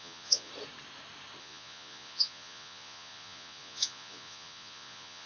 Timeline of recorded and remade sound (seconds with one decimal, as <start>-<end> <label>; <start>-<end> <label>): 0.0-0.5 remade; 0.5-1.4 recorded; 1.4-5.3 remade